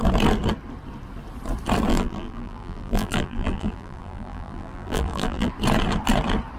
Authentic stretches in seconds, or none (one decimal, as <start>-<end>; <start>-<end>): 0.0-1.9; 5.5-6.6